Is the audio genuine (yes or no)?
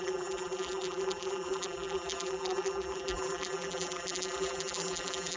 no